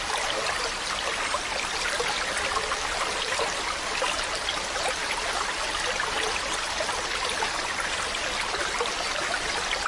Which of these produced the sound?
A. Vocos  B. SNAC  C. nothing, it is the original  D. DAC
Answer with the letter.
C